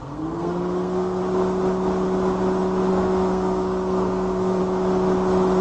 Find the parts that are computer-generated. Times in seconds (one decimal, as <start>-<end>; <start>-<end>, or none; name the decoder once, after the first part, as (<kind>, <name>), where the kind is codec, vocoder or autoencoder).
0.0-1.2 (codec, SNAC); 2.9-4.6